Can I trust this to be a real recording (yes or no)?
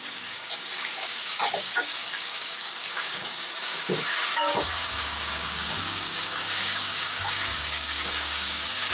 no